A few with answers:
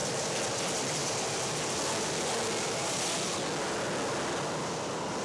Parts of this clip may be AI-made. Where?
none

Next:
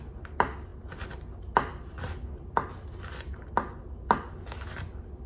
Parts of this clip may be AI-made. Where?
none

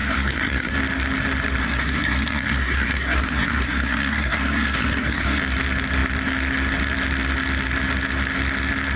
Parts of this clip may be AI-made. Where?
0.0-0.7; 1.6-5.4

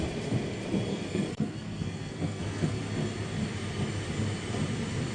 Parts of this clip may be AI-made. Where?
0.9-2.8

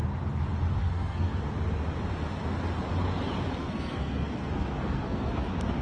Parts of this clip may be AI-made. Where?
0.8-1.3; 3.6-5.3